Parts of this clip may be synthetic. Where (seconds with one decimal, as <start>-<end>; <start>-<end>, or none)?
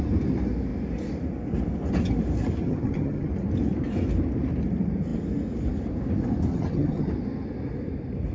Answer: 2.6-3.3; 6.5-7.1